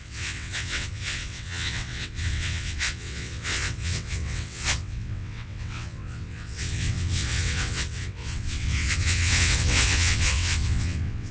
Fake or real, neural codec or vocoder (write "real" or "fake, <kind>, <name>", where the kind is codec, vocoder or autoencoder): fake, vocoder, WaveNeXt